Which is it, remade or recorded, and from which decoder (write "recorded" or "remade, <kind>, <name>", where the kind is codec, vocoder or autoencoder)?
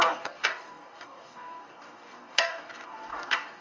remade, codec, DAC